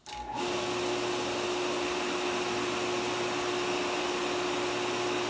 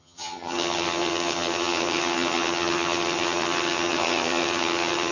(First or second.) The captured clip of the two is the first